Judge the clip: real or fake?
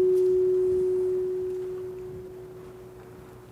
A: real